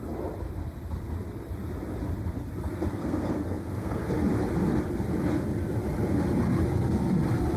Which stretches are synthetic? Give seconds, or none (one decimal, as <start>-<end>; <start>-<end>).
2.9-4.1